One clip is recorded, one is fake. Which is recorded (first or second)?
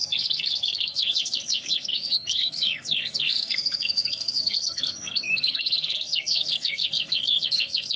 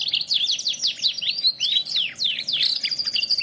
second